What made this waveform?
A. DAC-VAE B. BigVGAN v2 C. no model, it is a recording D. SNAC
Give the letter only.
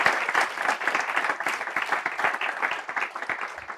C